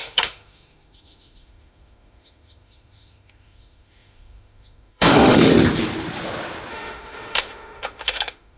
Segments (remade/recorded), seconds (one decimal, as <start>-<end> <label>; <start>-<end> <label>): 0.0-5.5 remade; 5.5-6.7 recorded; 6.7-8.6 remade